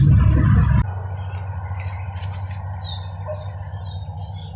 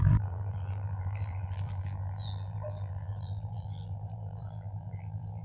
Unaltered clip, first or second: first